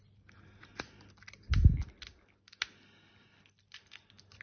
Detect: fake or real real